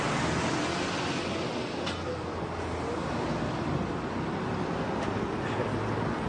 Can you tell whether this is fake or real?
real